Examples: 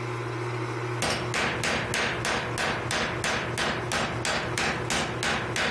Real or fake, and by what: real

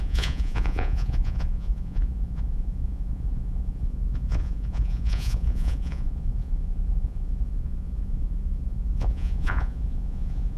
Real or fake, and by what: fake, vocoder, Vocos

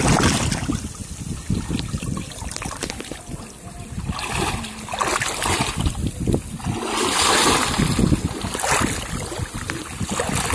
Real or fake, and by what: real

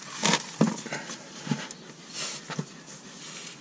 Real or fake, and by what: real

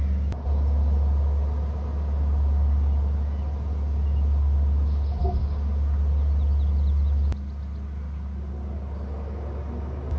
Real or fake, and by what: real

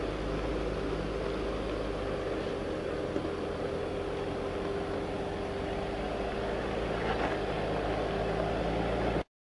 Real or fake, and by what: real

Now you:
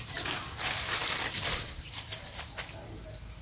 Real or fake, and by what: real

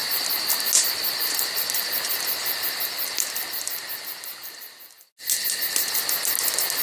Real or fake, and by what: real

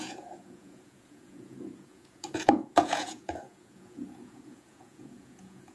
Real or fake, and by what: fake, vocoder, Vocos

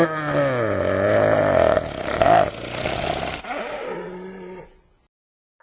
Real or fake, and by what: real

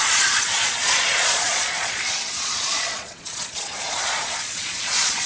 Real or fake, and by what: fake, vocoder, Vocos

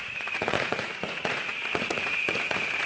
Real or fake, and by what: fake, vocoder, Vocos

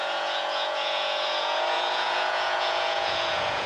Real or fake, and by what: fake, vocoder, Vocos